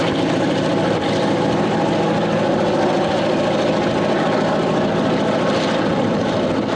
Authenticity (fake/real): real